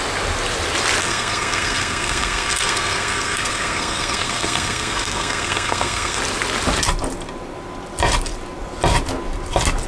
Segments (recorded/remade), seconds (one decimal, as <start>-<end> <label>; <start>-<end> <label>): 0.0-1.0 recorded; 1.0-6.2 remade; 6.2-9.9 recorded